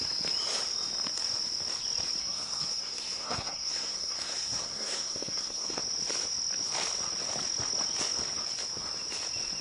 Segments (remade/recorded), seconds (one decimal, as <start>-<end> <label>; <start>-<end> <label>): 0.0-2.2 recorded; 2.2-5.8 remade; 5.8-9.6 recorded